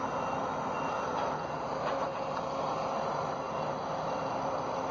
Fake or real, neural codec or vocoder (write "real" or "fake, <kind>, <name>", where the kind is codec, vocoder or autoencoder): fake, vocoder, BigVGAN v2